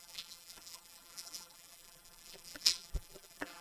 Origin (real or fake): fake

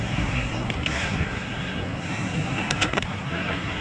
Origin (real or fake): fake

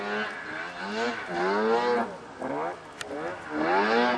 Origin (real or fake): real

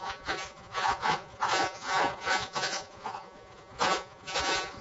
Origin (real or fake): fake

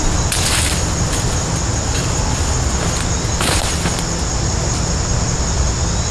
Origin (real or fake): real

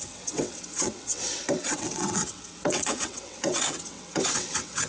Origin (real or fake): fake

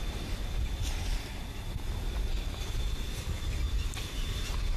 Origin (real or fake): real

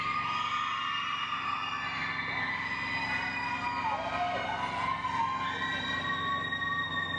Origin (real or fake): real